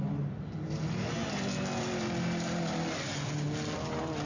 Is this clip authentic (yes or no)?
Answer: yes